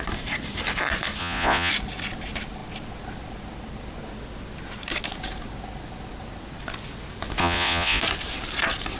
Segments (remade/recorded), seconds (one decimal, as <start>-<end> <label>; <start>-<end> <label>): 0.0-1.2 recorded; 1.2-1.7 remade; 1.7-7.4 recorded; 7.4-8.0 remade; 8.0-9.0 recorded